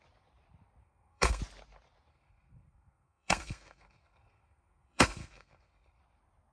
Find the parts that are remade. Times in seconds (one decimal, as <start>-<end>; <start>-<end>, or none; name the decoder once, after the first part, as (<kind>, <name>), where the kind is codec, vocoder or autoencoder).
0.8-1.4 (codec, SNAC); 2.1-6.0